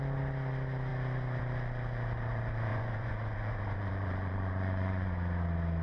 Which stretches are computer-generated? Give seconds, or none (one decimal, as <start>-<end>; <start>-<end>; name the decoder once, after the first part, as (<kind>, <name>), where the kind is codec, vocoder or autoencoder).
2.7-5.1 (vocoder, Vocos)